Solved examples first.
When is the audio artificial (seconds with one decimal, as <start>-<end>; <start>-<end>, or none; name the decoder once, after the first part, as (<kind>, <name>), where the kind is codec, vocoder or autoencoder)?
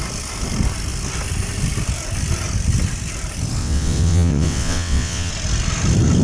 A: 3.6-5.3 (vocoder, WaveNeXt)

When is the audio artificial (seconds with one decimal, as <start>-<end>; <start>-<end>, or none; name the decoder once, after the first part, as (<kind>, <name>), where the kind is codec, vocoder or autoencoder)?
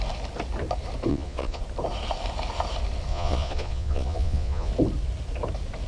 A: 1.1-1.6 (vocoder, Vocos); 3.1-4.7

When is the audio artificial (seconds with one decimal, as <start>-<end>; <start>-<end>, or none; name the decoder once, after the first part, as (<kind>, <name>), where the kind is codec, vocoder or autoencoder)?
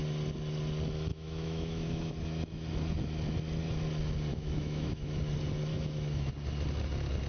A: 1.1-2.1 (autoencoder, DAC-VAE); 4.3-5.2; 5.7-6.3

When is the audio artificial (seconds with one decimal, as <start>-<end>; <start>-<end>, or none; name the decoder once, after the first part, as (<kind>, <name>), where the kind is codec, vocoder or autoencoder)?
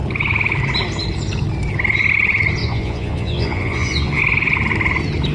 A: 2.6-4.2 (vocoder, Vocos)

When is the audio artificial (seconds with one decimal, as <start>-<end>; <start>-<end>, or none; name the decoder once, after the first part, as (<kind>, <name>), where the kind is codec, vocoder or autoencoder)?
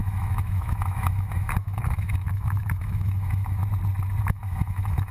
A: 0.0-3.6 (autoencoder, DAC-VAE); 4.2-5.1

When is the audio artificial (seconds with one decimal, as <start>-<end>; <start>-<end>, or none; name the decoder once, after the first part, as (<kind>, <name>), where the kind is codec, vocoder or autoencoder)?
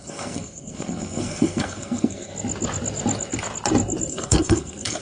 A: 0.0-2.3 (codec, SNAC); 4.1-5.0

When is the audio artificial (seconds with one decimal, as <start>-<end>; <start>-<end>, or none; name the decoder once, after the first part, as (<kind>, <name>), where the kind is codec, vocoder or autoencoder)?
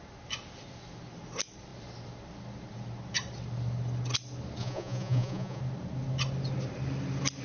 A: 4.6-5.6 (vocoder, Vocos)